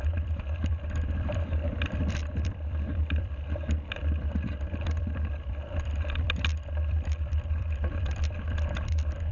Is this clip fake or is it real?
fake